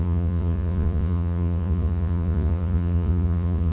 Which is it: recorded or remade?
remade